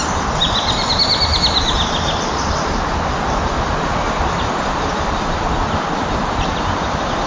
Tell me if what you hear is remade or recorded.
recorded